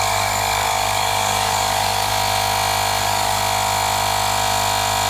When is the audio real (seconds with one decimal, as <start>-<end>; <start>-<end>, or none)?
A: 2.1-3.0; 3.4-5.1